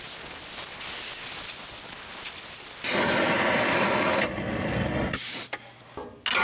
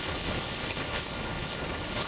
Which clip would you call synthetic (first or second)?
second